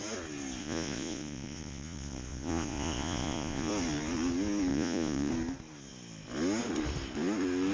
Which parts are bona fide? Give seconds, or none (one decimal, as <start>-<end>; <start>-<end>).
0.0-0.6; 3.7-4.7; 5.3-7.7